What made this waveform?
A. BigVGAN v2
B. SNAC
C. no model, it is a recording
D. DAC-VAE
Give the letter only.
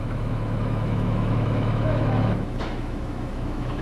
D